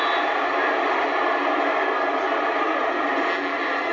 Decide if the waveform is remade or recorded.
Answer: recorded